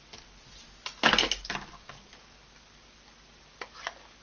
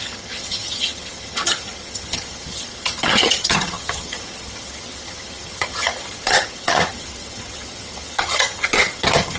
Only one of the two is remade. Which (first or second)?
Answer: second